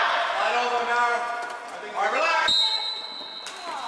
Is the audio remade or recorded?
recorded